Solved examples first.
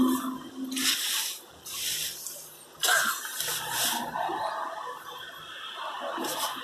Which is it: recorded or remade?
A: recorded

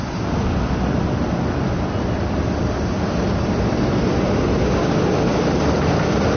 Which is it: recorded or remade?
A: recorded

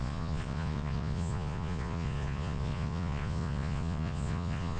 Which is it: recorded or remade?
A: remade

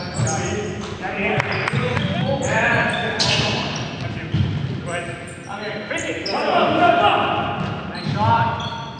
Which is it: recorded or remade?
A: recorded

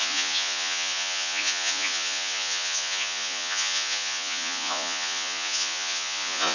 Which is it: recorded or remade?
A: remade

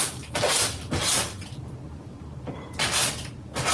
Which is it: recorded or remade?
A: recorded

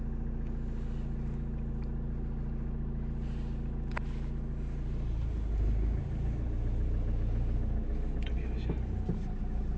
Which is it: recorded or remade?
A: recorded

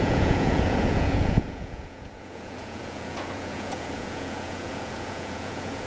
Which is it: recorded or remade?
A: remade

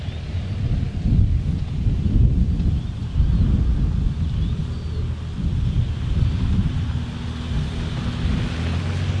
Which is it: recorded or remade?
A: recorded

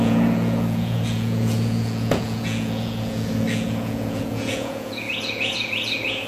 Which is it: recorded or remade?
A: remade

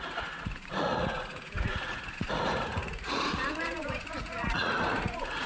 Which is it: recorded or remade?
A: remade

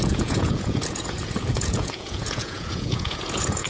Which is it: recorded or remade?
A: remade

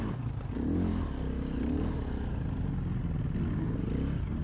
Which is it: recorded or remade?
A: recorded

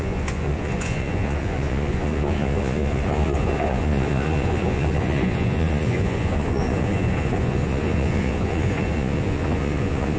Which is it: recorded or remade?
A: remade